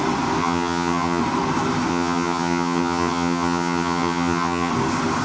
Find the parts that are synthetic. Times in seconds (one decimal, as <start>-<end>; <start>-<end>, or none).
0.4-1.2; 1.9-4.7